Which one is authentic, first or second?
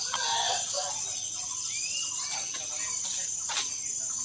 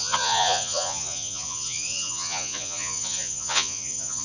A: first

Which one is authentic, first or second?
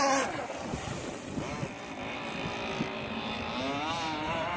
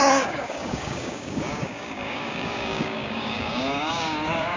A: first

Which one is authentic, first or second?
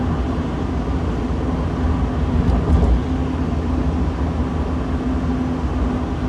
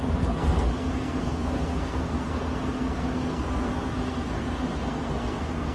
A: first